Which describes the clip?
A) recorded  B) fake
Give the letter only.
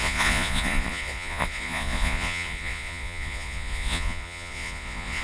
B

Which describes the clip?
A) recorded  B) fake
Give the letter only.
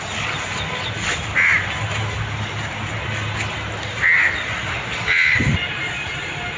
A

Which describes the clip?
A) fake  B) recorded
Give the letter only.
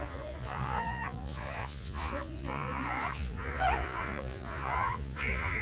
A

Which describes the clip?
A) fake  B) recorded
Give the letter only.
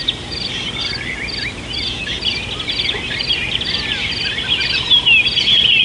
B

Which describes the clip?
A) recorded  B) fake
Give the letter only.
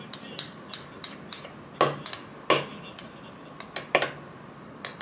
A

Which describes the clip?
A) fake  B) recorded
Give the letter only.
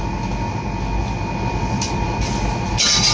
B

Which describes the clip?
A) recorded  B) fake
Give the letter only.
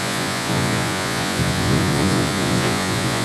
B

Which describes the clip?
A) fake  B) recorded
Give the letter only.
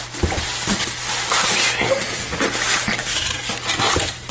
B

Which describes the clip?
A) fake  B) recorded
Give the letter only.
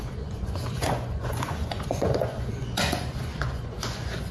A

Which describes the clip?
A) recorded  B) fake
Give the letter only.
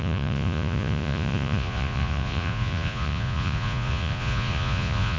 B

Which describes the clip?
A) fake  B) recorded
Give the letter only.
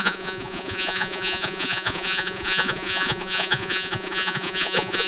A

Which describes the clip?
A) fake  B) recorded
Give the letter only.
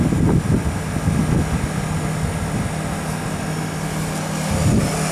B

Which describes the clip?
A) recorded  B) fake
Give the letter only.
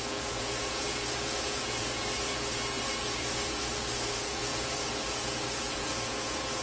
B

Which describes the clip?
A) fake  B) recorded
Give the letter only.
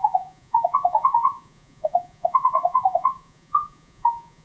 A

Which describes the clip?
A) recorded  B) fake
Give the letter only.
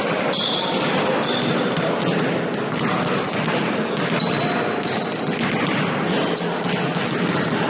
A